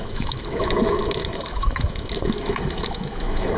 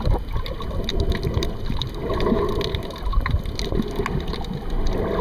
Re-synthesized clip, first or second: first